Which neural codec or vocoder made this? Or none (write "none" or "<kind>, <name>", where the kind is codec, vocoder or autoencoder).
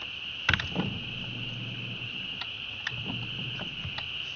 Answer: none